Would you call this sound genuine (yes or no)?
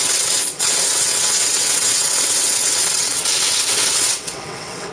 no